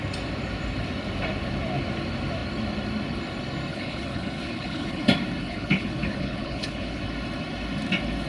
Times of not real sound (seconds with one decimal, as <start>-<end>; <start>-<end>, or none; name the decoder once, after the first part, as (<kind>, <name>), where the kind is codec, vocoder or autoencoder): 3.7-5.0 (codec, HILCodec); 5.4-7.0